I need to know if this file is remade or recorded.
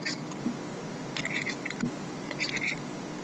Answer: recorded